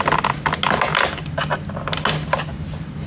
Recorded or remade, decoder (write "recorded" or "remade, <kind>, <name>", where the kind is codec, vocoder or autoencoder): recorded